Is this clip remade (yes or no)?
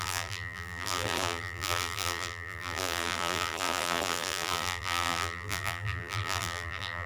yes